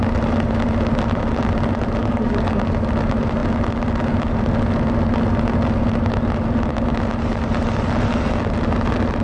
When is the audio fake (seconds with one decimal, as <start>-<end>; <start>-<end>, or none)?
2.0-2.6